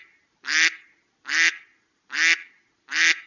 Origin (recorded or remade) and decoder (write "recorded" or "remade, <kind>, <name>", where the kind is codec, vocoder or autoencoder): recorded